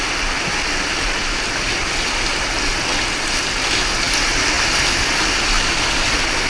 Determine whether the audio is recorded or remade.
recorded